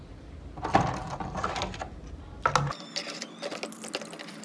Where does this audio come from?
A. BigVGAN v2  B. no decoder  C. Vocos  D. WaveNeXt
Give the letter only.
B